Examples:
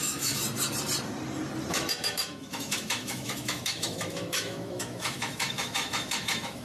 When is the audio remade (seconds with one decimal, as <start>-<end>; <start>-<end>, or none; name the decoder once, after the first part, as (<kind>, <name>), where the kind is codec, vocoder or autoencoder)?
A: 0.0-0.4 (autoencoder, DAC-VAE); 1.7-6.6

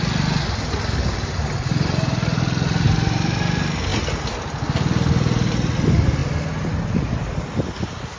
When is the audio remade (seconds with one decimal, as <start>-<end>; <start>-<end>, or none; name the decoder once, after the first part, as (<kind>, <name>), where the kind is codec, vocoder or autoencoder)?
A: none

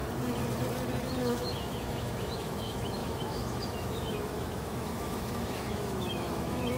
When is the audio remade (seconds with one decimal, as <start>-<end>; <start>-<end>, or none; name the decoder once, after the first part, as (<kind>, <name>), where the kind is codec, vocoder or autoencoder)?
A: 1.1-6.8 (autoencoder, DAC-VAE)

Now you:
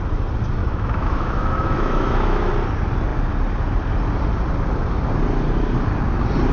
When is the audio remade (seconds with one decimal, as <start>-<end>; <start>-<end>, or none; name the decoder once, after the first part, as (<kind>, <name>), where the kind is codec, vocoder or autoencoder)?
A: 0.6-2.5 (autoencoder, DAC-VAE)

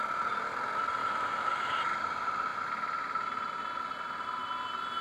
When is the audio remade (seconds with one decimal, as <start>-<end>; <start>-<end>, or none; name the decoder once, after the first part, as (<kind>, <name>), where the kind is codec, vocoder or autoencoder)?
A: 1.0-1.8 (autoencoder, DAC-VAE)

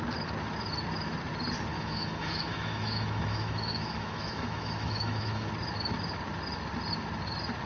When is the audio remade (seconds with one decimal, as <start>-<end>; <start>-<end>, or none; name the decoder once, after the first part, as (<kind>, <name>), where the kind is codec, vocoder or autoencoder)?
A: 1.7-5.5 (autoencoder, DAC-VAE)

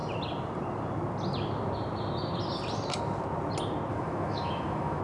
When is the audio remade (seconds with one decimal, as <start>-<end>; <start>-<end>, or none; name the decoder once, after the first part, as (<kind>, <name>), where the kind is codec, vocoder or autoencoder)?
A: 3.9-5.0 (autoencoder, DAC-VAE)